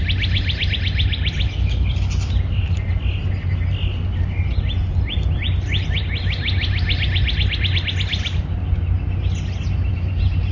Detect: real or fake real